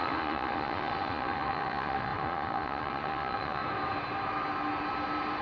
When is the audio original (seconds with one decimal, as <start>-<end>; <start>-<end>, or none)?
3.6-5.4